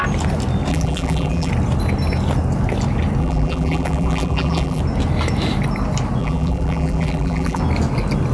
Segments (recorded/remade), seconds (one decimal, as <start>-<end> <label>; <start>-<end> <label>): 0.0-0.7 recorded; 0.7-1.5 remade; 1.5-3.2 recorded; 3.2-4.8 remade; 4.8-6.2 recorded; 6.2-7.6 remade; 7.6-8.3 recorded